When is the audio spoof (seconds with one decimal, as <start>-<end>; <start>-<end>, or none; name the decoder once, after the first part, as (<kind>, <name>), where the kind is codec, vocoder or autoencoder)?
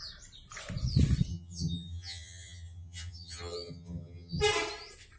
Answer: 1.3-4.4 (vocoder, HiFi-GAN)